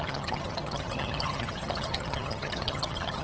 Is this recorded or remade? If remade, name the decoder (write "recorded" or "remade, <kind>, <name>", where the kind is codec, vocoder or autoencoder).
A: remade, vocoder, HiFi-GAN